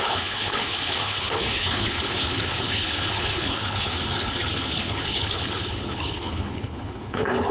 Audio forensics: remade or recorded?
remade